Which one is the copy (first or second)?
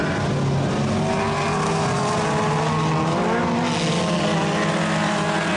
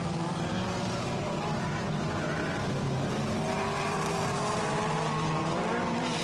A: second